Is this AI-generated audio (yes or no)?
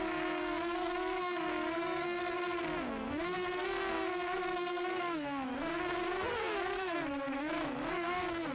yes